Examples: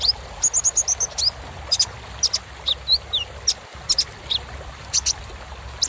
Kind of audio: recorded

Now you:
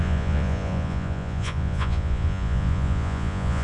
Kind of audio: remade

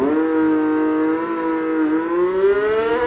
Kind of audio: recorded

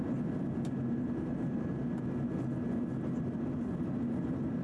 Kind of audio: recorded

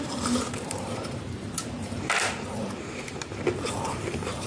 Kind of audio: remade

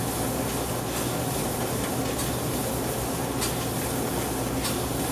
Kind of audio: recorded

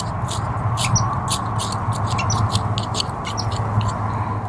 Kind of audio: recorded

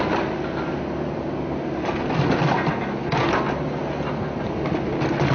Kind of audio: recorded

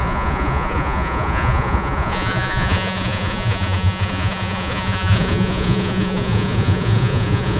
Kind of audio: remade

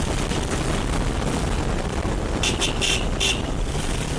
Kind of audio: recorded